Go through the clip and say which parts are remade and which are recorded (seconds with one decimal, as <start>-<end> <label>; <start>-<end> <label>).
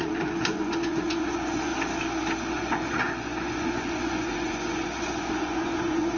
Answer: 0.0-1.7 remade; 1.7-2.5 recorded; 2.5-6.2 remade